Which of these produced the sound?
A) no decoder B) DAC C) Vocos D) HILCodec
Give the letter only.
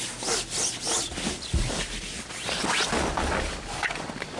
A